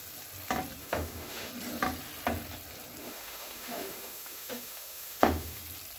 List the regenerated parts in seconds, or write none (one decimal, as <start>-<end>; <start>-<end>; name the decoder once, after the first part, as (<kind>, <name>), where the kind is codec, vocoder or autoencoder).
0.8-1.5 (autoencoder, DAC-VAE); 3.0-5.6